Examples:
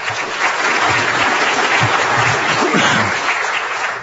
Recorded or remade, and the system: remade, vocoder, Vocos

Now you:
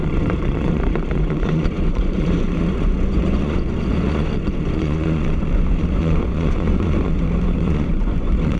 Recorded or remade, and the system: remade, vocoder, Vocos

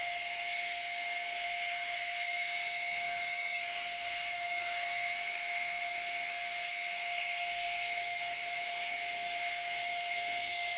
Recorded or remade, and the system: remade, codec, SNAC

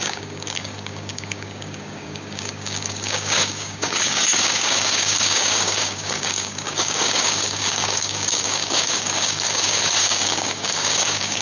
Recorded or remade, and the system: remade, codec, DAC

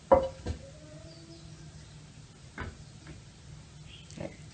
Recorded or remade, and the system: recorded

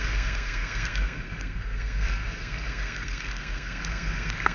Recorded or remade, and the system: remade, codec, SNAC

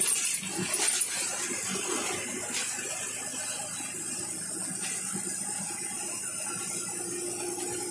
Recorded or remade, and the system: recorded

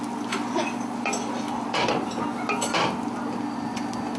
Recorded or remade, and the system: recorded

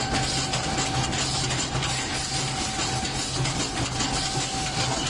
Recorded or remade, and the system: recorded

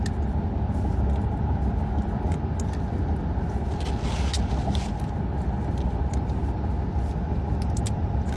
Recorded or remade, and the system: recorded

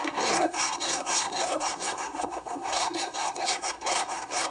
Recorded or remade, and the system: remade, codec, SNAC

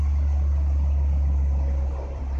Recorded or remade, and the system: remade, vocoder, BigVGAN v2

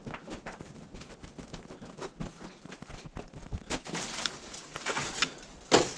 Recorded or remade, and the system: recorded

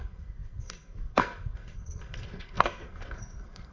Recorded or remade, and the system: remade, codec, SNAC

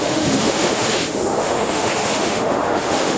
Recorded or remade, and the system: remade, autoencoder, DAC-VAE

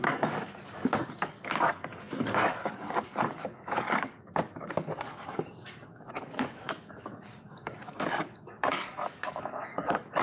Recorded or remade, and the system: remade, codec, DAC